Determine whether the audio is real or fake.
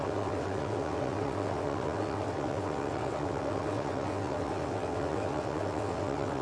fake